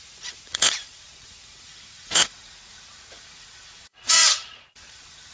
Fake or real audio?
fake